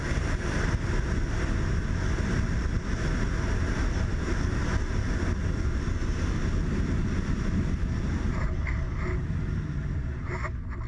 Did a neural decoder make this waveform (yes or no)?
no